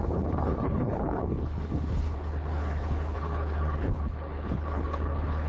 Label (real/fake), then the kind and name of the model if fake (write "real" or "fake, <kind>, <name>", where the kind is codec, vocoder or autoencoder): fake, codec, HILCodec